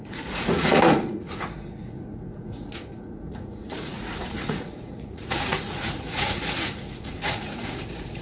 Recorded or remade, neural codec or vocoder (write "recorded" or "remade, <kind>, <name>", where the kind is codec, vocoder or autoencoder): remade, vocoder, Vocos